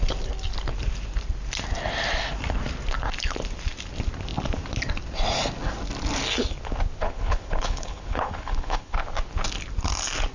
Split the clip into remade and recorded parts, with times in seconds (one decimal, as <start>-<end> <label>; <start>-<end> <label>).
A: 0.0-7.0 recorded; 7.0-9.0 remade; 9.0-10.3 recorded

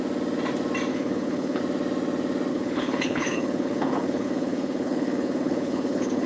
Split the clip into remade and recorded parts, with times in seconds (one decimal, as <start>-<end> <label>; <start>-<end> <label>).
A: 0.0-0.9 recorded; 0.9-1.6 remade; 1.6-2.5 recorded; 2.5-6.3 remade

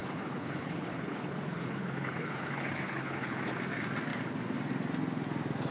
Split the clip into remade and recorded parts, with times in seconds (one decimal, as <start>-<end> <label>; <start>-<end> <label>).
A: 0.0-3.4 remade; 3.4-5.7 recorded